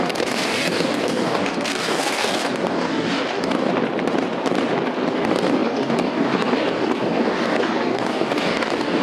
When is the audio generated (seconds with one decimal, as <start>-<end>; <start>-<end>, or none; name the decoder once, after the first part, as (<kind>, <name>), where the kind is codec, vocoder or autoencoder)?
0.0-3.7 (codec, DAC); 5.1-9.0